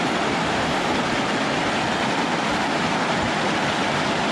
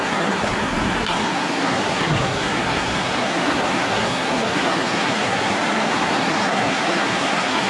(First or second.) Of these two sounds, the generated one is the second